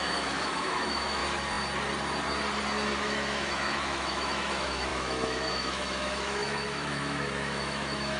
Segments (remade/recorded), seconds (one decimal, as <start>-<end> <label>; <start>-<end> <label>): 0.0-1.2 remade; 1.2-3.0 recorded; 3.0-8.2 remade